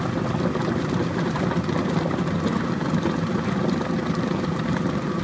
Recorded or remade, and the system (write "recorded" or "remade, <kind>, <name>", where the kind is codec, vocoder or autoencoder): recorded